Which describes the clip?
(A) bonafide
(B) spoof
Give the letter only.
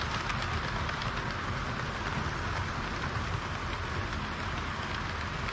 A